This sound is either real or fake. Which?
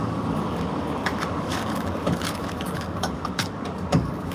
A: fake